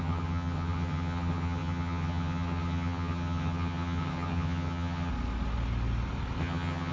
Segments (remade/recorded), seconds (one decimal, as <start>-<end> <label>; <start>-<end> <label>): 0.0-5.1 remade; 5.1-6.4 recorded; 6.4-6.9 remade